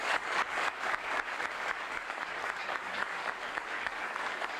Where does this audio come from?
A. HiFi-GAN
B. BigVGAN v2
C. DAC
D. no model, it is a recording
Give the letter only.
C